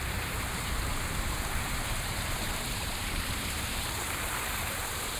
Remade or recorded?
remade